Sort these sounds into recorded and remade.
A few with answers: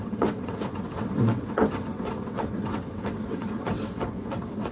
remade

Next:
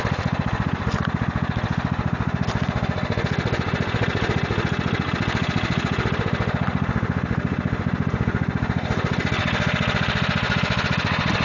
recorded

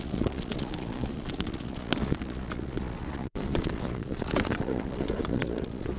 remade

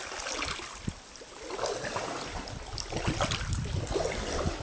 recorded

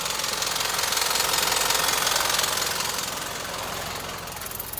recorded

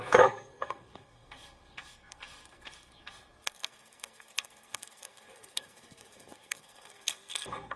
remade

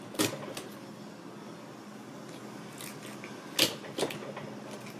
recorded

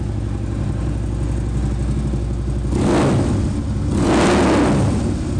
recorded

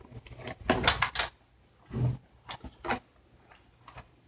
recorded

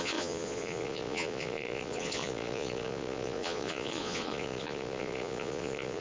remade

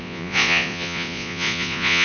remade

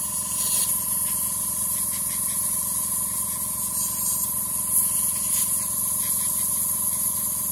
recorded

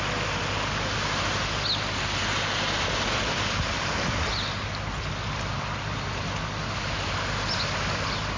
recorded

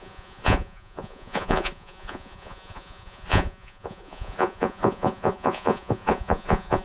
remade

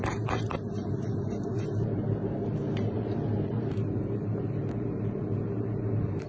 remade